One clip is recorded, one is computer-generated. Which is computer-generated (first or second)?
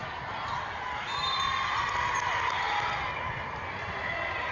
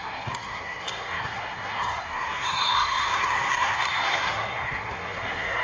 second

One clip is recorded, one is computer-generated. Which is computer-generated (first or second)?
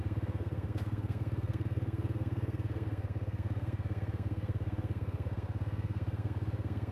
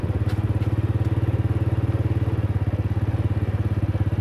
first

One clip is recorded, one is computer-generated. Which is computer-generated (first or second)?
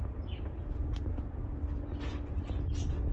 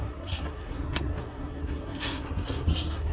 second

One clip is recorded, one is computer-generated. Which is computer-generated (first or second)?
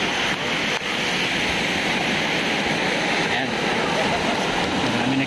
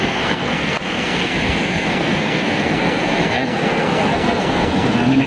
second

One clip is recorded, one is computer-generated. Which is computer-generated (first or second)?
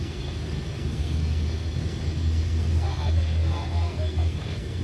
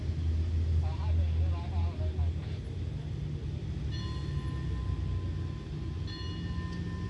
first